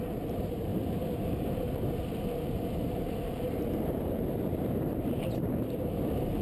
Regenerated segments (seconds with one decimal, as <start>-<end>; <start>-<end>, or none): 0.0-0.7; 1.4-6.4